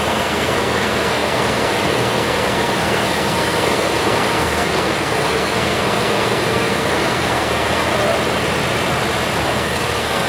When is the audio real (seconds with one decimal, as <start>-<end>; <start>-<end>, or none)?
7.9-9.4